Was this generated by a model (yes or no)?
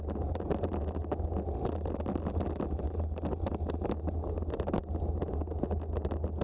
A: no